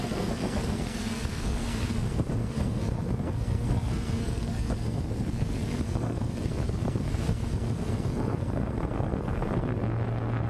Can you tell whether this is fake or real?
fake